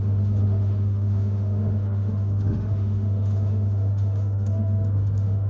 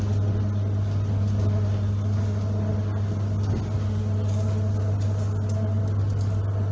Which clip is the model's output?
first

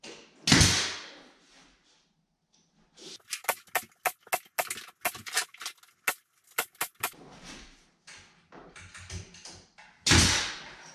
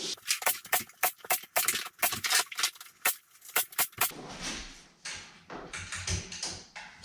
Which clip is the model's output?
second